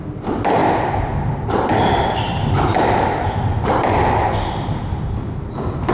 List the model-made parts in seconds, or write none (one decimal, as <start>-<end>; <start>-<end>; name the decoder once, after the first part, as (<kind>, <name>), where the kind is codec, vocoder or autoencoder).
0.6-3.3 (vocoder, BigVGAN v2)